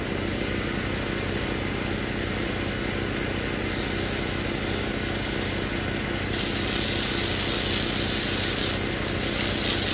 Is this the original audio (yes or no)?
yes